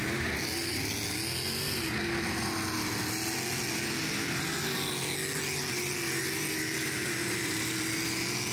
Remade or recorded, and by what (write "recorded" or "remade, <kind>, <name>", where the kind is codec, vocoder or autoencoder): recorded